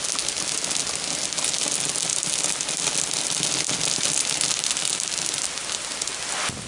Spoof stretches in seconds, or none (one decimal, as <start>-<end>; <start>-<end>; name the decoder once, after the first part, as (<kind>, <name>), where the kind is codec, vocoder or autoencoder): none